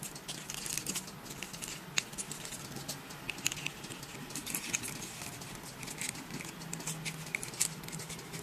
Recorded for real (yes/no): yes